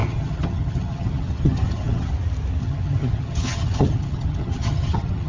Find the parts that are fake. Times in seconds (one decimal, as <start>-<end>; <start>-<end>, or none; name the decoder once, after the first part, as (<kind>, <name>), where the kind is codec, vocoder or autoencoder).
0.0-2.1 (vocoder, HiFi-GAN); 2.6-5.3